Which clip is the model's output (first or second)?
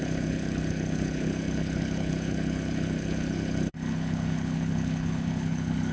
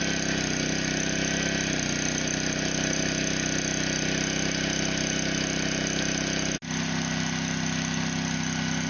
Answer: first